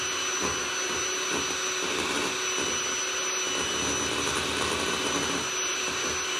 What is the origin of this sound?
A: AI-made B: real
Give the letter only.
B